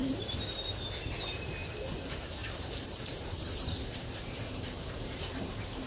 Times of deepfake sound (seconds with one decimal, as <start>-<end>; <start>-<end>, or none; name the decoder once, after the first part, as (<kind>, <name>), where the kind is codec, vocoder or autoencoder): 2.4-5.4 (vocoder, BigVGAN v2)